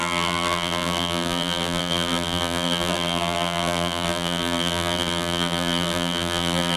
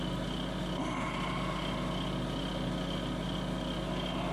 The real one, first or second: second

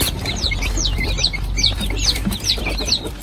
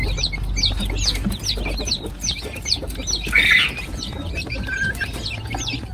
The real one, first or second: second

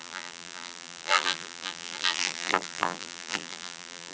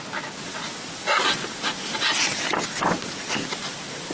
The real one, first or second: second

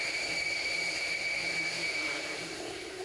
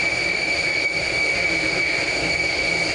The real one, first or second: second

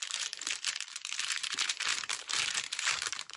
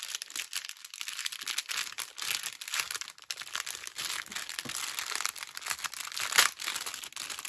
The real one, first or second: second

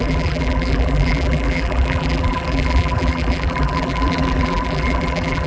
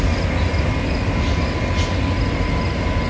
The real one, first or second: second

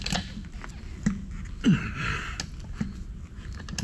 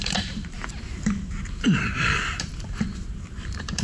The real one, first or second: first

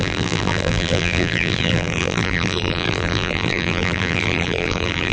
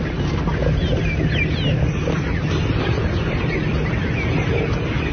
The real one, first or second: second